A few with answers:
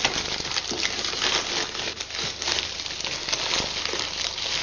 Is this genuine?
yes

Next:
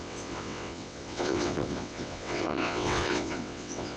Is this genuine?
no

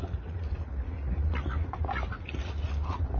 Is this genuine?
no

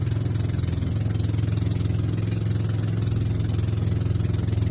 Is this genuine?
yes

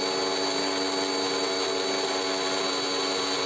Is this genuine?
yes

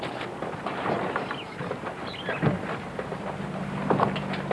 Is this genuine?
yes